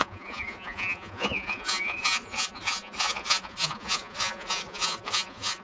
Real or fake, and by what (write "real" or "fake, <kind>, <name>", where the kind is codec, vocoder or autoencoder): fake, vocoder, Vocos